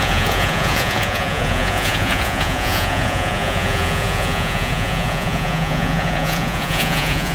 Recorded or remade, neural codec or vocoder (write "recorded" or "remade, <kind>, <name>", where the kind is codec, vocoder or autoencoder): remade, vocoder, Vocos